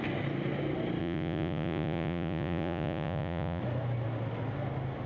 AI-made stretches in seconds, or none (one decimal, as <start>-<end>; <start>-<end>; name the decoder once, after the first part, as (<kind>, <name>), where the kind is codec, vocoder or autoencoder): 1.0-3.6 (vocoder, Vocos)